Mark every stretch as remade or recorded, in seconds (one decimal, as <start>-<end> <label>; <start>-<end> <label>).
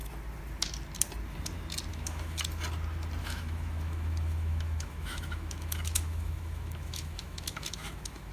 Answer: 0.0-1.9 recorded; 1.9-2.4 remade; 2.4-3.2 recorded; 3.2-8.3 remade